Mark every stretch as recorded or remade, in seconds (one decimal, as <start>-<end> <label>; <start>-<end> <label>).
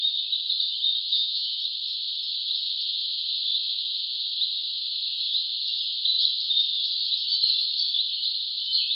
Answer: 0.0-1.1 recorded; 1.1-1.6 remade; 1.6-8.9 recorded